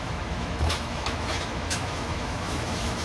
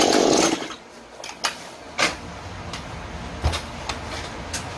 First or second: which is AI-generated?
first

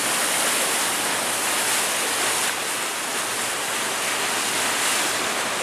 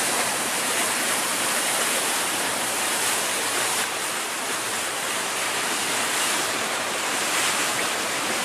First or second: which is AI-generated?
second